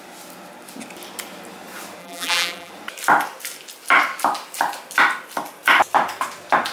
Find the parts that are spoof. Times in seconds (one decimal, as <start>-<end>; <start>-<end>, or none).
2.0-2.7